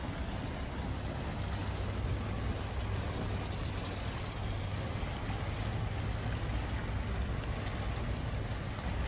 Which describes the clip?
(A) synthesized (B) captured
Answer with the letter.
B